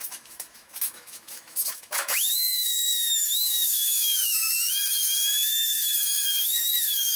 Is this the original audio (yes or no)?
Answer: no